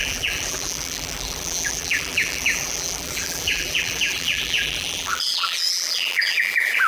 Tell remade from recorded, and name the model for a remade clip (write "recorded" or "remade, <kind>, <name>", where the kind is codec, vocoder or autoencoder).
remade, vocoder, BigVGAN v2